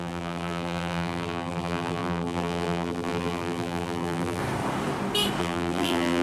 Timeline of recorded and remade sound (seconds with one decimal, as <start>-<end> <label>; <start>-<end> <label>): 0.0-4.4 remade; 4.4-5.4 recorded; 5.4-6.2 remade